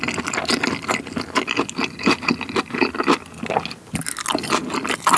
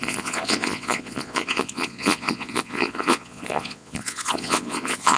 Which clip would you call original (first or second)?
first